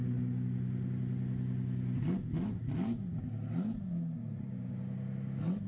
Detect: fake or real real